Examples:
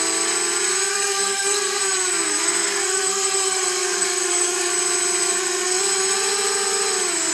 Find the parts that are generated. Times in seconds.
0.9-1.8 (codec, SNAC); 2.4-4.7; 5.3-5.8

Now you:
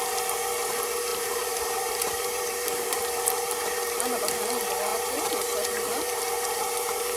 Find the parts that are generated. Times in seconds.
1.1-4.3 (vocoder, BigVGAN v2); 4.9-7.2

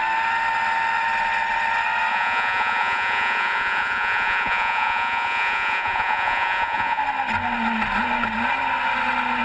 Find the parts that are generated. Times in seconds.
2.1-7.0 (vocoder, Vocos)

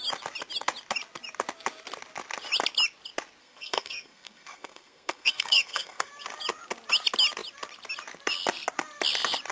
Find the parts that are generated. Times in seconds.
3.4-6.1 (codec, SNAC)

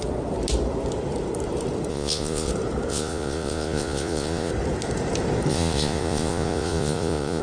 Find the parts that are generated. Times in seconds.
1.9-2.5 (vocoder, Vocos); 2.9-4.5; 5.5-7.4